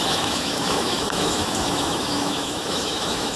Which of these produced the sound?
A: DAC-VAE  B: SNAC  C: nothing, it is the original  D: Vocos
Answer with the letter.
A